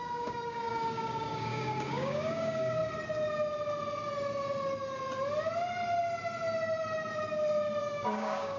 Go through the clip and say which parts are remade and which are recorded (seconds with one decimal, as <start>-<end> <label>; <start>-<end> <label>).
0.0-2.8 remade; 2.8-7.8 recorded; 7.8-8.6 remade